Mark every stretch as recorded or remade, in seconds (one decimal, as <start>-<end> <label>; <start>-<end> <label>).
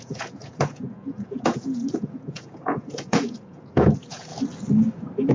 0.0-4.3 remade; 4.3-5.3 recorded